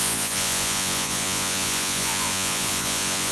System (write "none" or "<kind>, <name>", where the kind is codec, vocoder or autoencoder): vocoder, Vocos